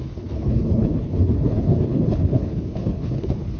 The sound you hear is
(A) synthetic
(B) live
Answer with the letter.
A